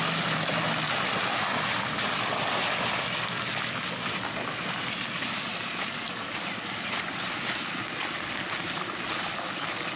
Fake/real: real